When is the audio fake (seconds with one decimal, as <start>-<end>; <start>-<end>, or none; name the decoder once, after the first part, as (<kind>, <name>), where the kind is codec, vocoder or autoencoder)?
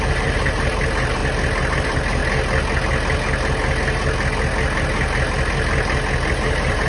0.0-1.2 (vocoder, BigVGAN v2); 1.7-2.2; 6.3-6.9